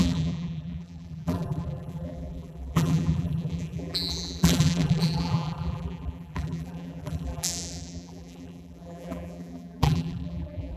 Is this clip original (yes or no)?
no